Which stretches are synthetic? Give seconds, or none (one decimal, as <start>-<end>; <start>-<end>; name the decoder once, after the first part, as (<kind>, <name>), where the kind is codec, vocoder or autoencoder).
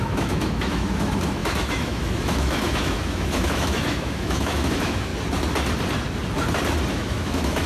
0.0-5.1 (autoencoder, DAC-VAE); 6.9-7.7